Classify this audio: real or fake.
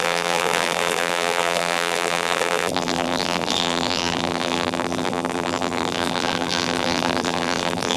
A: fake